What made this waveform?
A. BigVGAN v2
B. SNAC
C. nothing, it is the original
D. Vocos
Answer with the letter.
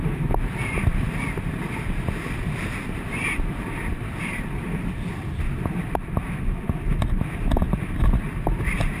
C